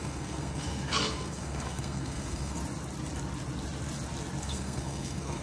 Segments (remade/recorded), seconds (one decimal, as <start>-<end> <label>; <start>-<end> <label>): 0.0-2.6 remade; 2.6-4.4 recorded; 4.4-5.4 remade